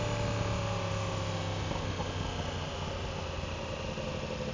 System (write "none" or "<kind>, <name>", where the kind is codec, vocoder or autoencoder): none